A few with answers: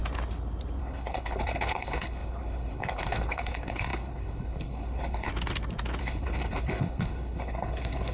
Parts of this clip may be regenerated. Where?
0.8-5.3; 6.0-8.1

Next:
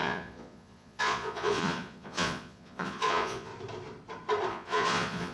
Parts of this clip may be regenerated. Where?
0.0-3.5; 4.5-5.3

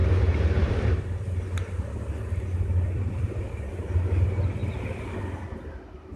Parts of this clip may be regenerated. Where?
0.0-4.6; 5.2-6.2

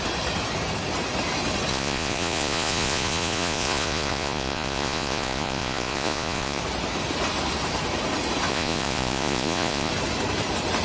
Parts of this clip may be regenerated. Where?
1.7-6.6; 8.5-9.9

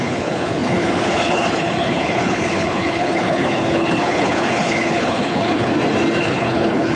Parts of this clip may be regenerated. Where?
0.0-5.7; 6.2-7.0

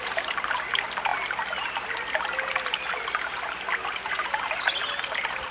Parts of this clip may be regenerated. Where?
none